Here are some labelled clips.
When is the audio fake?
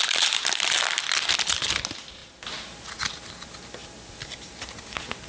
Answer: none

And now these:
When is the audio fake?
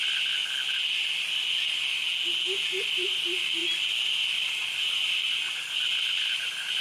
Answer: 0.0-0.4; 2.9-6.8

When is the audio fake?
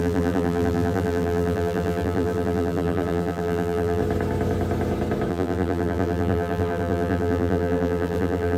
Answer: 0.0-4.0; 5.3-8.6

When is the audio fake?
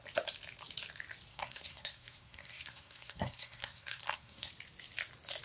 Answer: 1.3-4.5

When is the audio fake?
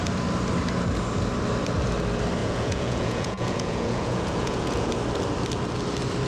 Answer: 2.4-4.9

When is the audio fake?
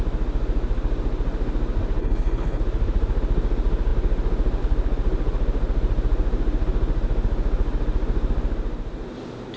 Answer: 2.0-2.6